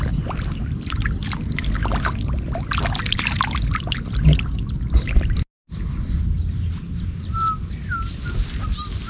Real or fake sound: real